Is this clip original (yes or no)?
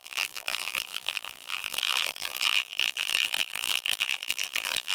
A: no